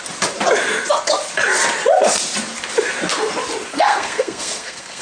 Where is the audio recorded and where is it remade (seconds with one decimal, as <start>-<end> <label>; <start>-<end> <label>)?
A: 0.0-3.7 recorded; 3.7-5.0 remade